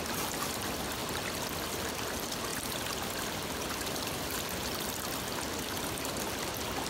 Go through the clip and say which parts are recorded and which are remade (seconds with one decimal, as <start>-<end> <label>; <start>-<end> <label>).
0.0-6.9 recorded